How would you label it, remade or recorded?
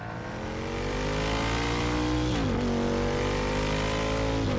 recorded